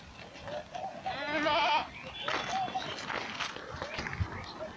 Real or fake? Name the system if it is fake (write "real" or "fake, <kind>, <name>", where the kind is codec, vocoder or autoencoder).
real